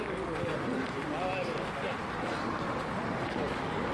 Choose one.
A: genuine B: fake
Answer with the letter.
A